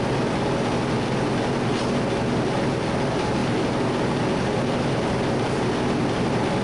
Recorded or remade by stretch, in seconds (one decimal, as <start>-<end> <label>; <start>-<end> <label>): 0.0-6.6 recorded